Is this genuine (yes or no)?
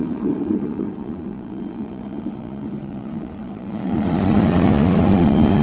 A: no